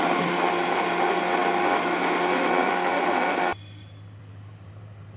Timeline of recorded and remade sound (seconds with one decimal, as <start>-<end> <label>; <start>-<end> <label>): 0.0-5.2 recorded